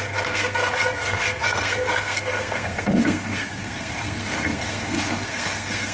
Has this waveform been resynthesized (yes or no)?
yes